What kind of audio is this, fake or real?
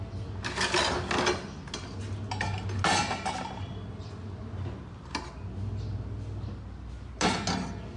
real